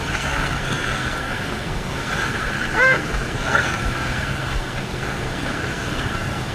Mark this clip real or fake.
fake